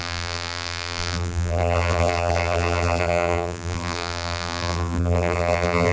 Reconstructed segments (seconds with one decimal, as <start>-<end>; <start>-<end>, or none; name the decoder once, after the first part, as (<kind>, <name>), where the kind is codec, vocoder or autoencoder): 0.0-5.9 (vocoder, BigVGAN v2)